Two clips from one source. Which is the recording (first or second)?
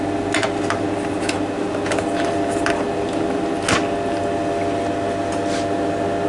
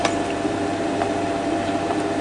first